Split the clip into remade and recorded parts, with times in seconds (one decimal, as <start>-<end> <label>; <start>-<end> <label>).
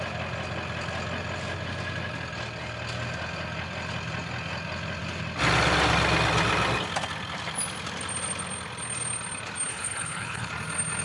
0.0-9.7 recorded; 9.7-10.5 remade; 10.5-11.0 recorded